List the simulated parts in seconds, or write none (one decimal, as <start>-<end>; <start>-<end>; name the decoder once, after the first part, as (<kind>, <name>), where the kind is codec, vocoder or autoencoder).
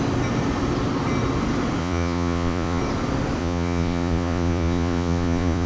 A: 1.8-2.8 (vocoder, Vocos); 3.4-5.7